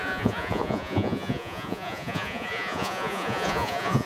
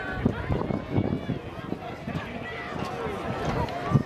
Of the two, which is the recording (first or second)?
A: second